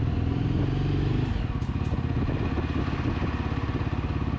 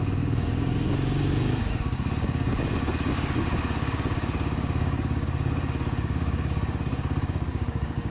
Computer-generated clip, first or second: second